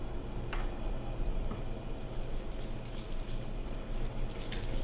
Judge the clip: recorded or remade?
recorded